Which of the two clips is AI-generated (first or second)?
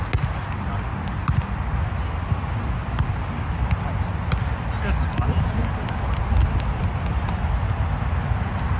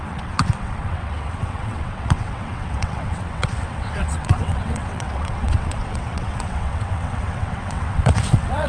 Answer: second